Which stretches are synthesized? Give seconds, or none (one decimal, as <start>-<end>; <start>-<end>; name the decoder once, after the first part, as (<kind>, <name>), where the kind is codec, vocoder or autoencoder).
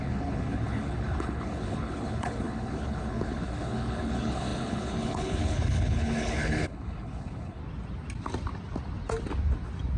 0.0-7.6 (codec, HILCodec)